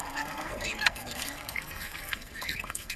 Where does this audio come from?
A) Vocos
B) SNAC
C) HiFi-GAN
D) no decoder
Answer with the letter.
B